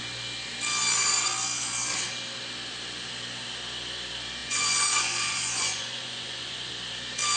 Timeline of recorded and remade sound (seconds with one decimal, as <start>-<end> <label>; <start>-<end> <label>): 0.0-4.4 recorded; 4.4-6.7 remade; 6.7-7.4 recorded

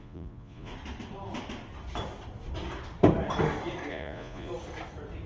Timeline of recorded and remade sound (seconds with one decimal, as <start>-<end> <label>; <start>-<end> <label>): 0.0-0.7 remade; 0.7-3.9 recorded; 3.9-4.5 remade; 4.5-5.3 recorded

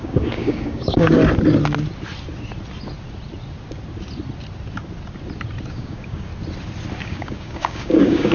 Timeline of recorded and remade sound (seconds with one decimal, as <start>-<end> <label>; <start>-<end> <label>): 0.0-1.2 remade; 1.2-5.7 recorded; 5.7-6.3 remade; 6.3-7.0 recorded; 7.0-8.3 remade